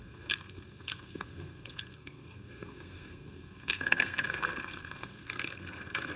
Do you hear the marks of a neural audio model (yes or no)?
yes